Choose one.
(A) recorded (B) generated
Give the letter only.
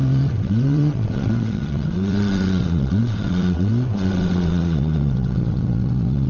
B